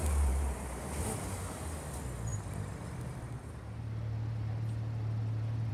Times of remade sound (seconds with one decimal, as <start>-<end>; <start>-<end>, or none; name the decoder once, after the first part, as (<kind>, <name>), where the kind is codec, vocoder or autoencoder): 0.0-0.8 (vocoder, BigVGAN v2)